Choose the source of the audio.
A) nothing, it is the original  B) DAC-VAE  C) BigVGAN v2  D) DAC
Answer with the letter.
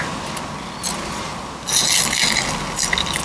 A